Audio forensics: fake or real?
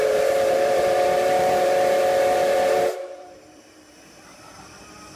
fake